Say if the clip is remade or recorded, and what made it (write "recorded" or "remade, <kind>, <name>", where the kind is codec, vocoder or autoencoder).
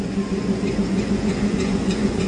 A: remade, vocoder, Vocos